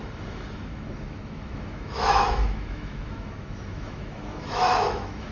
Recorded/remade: remade